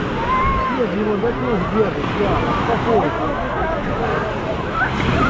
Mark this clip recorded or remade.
recorded